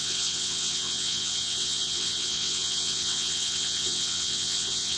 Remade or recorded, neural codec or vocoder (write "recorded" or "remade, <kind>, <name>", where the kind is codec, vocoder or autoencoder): remade, vocoder, WaveNeXt